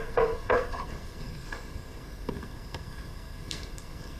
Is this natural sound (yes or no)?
no